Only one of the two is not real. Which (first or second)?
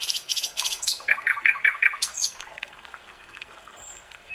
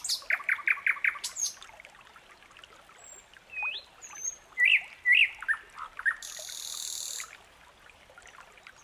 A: first